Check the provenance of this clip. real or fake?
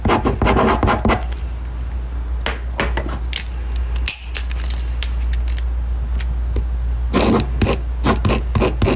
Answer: real